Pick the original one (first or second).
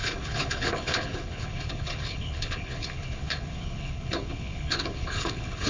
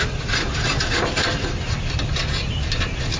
second